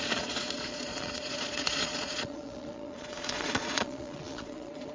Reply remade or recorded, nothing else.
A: remade